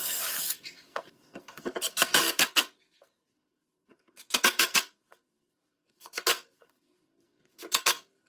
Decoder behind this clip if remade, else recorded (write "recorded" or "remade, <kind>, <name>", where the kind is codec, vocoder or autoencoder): remade, codec, SNAC